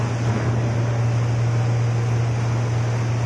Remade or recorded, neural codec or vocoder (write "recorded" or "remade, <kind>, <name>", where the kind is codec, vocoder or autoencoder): recorded